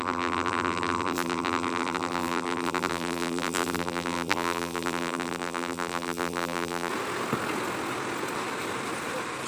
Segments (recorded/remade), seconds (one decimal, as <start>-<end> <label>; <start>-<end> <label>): 0.0-6.9 remade; 6.9-9.5 recorded